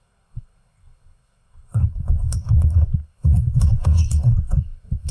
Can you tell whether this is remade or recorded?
remade